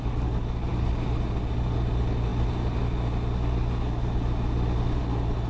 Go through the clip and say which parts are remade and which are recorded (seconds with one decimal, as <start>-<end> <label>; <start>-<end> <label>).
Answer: 0.0-5.5 recorded